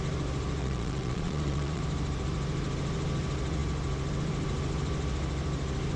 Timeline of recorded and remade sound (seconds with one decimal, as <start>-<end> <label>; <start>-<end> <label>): 0.0-0.6 recorded; 0.6-1.8 remade; 1.8-6.0 recorded